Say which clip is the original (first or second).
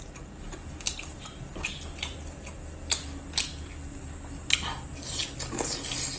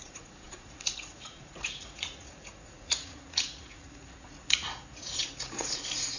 first